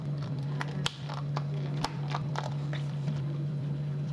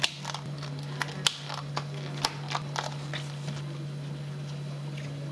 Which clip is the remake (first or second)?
first